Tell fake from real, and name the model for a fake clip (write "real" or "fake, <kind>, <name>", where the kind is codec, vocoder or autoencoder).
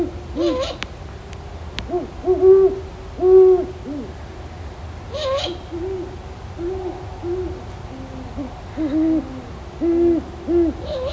real